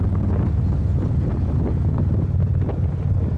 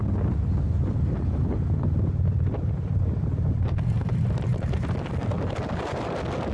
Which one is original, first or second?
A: first